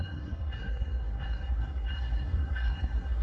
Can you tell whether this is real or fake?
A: fake